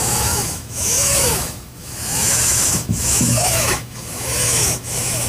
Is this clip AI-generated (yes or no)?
yes